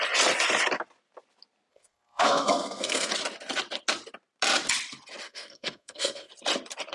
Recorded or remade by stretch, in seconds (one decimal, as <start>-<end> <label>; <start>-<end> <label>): 0.0-1.7 recorded; 1.7-3.1 remade; 3.1-5.3 recorded; 5.3-6.3 remade; 6.3-6.9 recorded